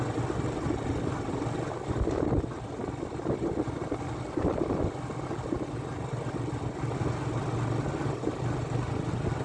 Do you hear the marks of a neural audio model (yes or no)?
no